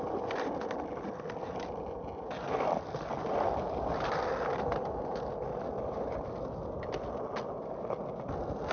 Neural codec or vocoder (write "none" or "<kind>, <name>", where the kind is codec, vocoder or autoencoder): none